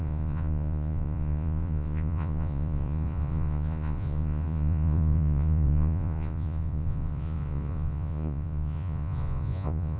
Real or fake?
fake